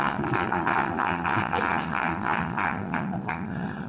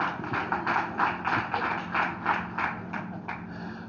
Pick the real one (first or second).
second